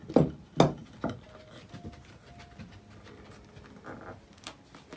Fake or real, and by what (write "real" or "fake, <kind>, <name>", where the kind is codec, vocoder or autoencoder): real